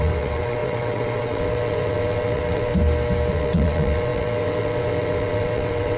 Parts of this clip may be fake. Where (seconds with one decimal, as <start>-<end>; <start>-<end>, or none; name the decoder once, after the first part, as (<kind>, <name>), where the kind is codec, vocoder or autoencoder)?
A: 0.0-2.7 (vocoder, WaveNeXt); 3.3-6.0